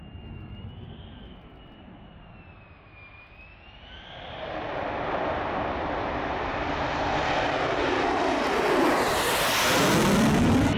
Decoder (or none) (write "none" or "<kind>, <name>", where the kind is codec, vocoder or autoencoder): none